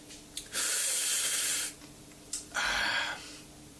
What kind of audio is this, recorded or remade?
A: recorded